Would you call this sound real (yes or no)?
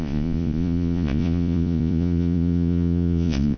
no